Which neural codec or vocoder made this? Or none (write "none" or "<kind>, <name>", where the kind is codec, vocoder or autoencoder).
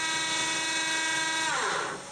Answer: none